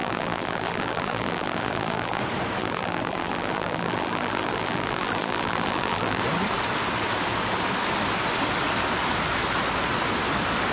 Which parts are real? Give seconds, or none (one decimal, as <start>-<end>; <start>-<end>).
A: 2.2-2.6; 6.2-10.7